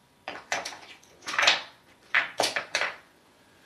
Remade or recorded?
remade